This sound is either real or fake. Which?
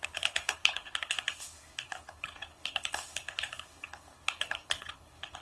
fake